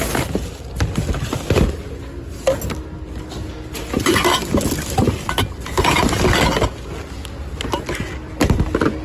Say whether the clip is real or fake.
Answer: real